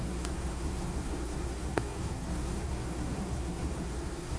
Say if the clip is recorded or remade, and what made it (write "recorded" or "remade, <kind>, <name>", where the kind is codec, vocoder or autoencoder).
remade, codec, SNAC